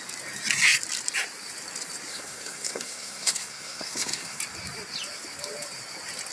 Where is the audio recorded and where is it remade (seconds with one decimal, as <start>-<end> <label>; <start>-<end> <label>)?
0.0-2.1 recorded; 2.1-4.4 remade; 4.4-6.3 recorded